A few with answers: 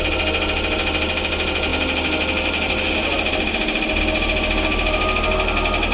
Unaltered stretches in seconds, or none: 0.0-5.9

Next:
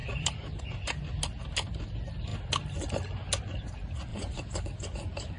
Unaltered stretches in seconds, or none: 0.6-4.1; 4.6-5.4